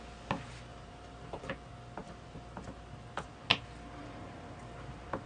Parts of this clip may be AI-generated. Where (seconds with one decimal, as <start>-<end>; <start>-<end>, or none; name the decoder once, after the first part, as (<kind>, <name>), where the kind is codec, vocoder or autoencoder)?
0.7-1.5 (vocoder, BigVGAN v2); 4.0-5.3